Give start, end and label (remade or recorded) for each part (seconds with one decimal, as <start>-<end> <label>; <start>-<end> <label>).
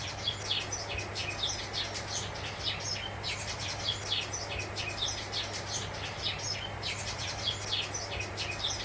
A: 0.0-8.8 recorded